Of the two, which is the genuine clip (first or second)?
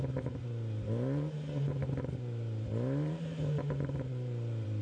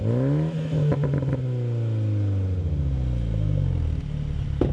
second